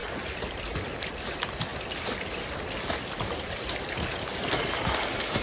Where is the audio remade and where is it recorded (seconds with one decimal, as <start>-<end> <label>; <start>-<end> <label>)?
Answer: 0.0-0.6 remade; 0.6-5.4 recorded